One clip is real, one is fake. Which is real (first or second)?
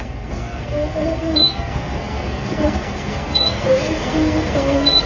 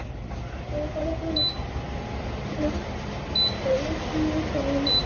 second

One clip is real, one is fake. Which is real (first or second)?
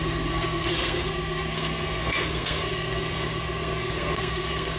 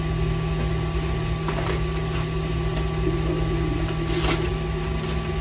second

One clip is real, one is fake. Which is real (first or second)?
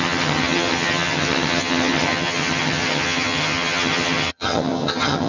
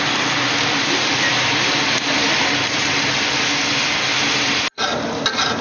second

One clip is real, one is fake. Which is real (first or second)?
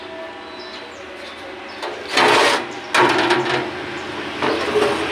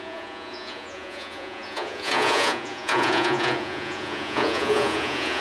first